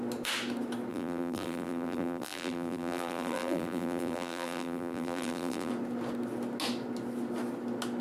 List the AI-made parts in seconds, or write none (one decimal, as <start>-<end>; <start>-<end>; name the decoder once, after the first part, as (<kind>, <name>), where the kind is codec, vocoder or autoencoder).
0.9-5.7 (vocoder, BigVGAN v2)